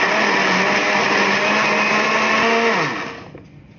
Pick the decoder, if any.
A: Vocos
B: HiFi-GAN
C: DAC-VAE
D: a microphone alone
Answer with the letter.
D